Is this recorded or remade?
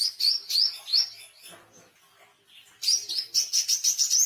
recorded